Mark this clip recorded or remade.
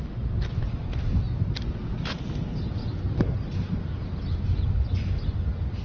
recorded